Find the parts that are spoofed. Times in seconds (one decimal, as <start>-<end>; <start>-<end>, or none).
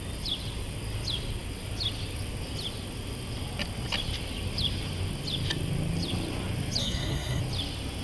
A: 6.8-7.4